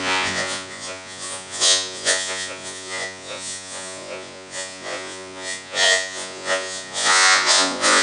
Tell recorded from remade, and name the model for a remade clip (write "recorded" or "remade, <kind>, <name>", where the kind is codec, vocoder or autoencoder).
remade, vocoder, Vocos